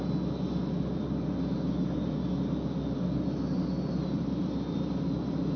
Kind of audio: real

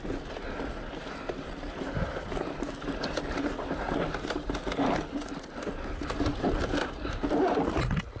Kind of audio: real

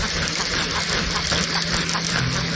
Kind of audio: real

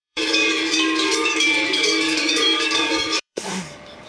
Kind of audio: fake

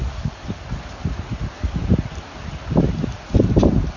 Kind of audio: real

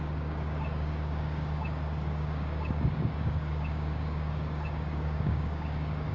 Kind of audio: fake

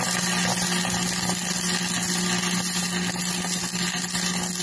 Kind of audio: real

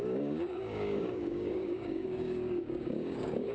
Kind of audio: fake